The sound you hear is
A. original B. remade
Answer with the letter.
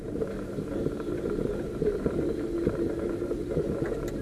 A